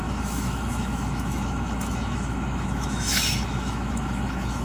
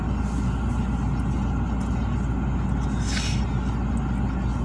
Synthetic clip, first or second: first